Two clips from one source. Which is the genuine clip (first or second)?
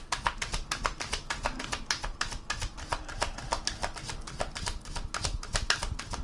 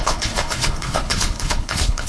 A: first